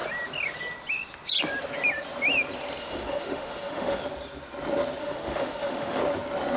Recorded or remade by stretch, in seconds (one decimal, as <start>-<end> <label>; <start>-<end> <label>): 0.0-2.8 recorded; 2.8-4.0 remade; 4.0-5.0 recorded; 5.0-6.0 remade; 6.0-6.6 recorded